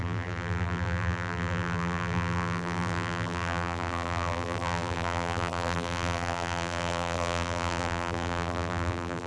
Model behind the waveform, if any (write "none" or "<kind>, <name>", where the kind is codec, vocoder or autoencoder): vocoder, BigVGAN v2